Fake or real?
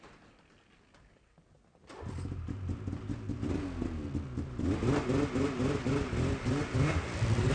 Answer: real